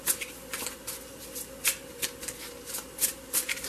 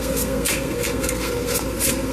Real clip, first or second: first